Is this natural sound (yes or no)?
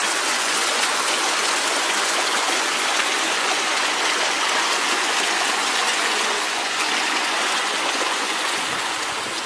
no